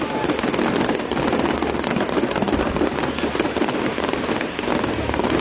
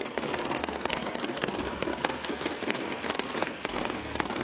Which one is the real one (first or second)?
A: first